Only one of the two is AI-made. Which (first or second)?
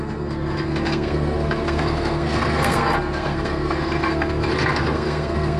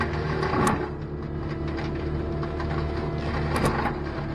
first